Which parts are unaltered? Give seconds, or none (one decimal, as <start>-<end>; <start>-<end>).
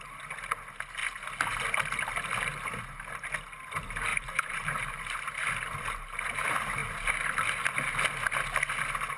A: 0.0-4.1; 5.0-9.2